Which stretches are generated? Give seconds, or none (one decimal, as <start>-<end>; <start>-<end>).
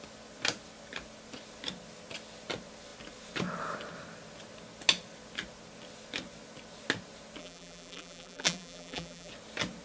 7.4-9.3